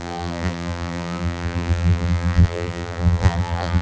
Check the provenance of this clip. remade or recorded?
remade